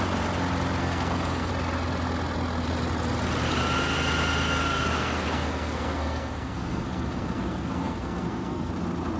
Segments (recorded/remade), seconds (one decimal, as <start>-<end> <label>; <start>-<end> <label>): 0.0-0.8 recorded; 0.8-1.5 remade; 1.5-4.7 recorded; 4.7-8.7 remade; 8.7-9.2 recorded